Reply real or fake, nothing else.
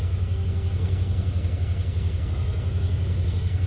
fake